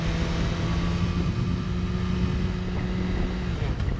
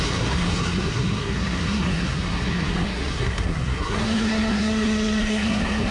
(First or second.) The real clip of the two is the first